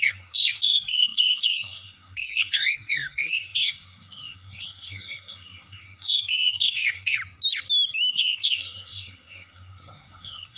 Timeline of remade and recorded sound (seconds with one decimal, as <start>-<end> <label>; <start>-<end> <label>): 0.0-7.2 remade; 7.2-8.1 recorded; 8.1-10.6 remade